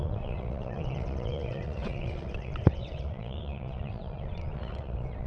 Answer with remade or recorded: remade